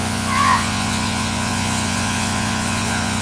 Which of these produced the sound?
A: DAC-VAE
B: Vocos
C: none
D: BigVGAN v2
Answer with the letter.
B